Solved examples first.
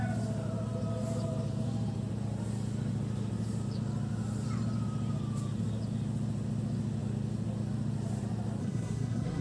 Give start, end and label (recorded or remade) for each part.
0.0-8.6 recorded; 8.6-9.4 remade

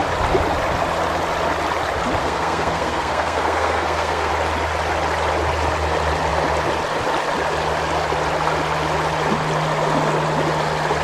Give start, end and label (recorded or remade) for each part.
0.0-2.2 recorded; 2.2-4.3 remade; 4.3-11.0 recorded

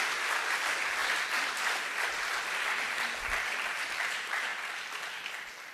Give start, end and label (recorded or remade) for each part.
0.0-5.7 recorded

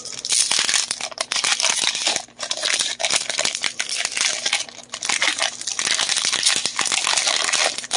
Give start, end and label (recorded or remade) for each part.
0.0-8.0 recorded

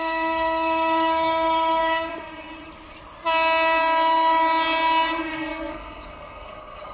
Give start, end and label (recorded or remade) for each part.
0.0-2.1 remade; 2.1-5.5 recorded; 5.5-6.9 remade